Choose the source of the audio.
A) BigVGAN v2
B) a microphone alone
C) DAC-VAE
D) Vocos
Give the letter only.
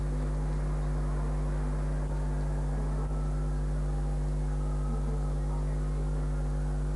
B